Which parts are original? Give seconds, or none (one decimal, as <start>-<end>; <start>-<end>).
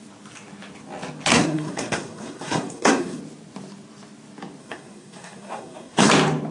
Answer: 0.0-1.3; 3.2-4.6; 6.1-6.5